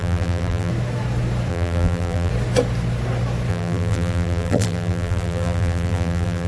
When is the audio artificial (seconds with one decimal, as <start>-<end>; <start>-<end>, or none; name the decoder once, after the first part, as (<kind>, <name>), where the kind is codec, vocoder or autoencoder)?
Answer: 0.0-0.7 (vocoder, BigVGAN v2); 1.5-2.3; 3.5-6.5